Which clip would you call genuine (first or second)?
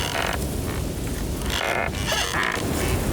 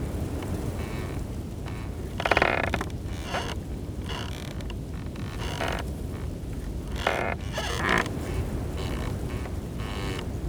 first